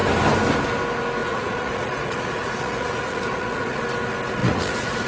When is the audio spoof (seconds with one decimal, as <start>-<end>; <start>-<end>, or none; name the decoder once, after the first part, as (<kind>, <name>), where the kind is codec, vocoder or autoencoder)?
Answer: 1.2-3.8 (vocoder, Vocos); 4.4-5.1